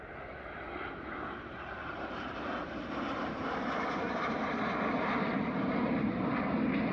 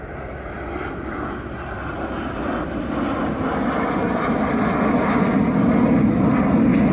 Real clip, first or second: second